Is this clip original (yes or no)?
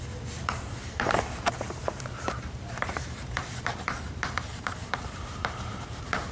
no